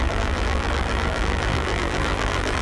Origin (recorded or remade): remade